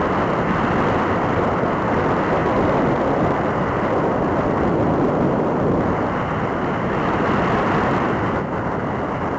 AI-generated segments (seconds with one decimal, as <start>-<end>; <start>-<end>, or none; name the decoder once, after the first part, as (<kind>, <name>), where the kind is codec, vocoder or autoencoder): none